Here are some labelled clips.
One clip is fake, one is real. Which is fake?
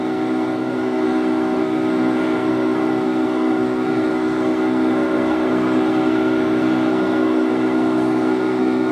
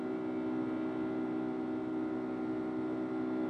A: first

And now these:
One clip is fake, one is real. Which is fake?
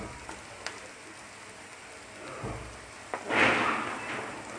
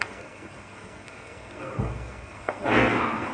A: second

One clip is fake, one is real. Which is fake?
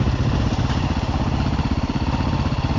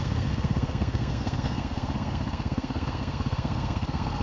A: second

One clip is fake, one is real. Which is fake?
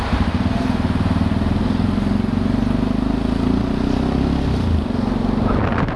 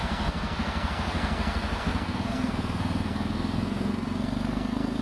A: second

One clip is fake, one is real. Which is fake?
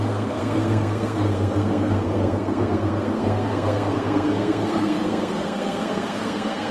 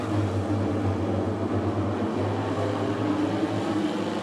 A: first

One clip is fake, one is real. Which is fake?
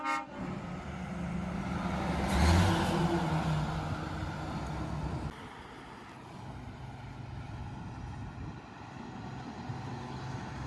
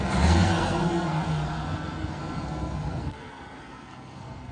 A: second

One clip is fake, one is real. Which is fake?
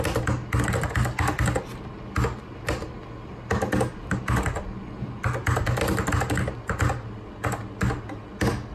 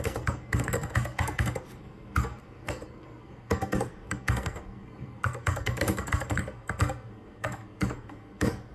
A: second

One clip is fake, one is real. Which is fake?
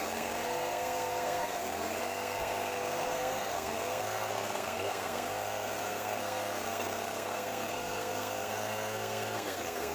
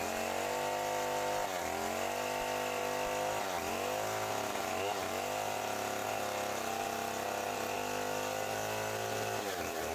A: first